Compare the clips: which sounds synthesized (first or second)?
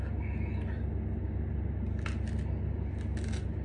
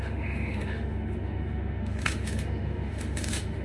second